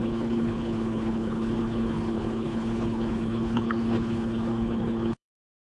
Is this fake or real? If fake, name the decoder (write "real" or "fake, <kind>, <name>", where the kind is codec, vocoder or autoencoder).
fake, codec, HILCodec